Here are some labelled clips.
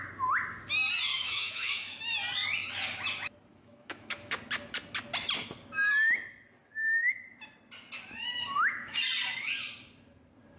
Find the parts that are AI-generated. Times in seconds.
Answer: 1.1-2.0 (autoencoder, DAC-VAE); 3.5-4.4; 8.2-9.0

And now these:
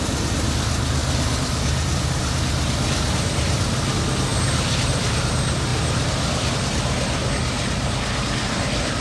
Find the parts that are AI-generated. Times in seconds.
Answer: 1.0-3.1 (vocoder, BigVGAN v2); 4.3-5.3; 5.7-6.5

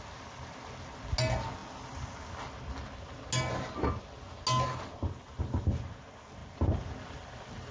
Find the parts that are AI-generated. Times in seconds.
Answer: none